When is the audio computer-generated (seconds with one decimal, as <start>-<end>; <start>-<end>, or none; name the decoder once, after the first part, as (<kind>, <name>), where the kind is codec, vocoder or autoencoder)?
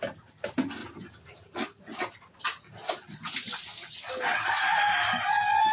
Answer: none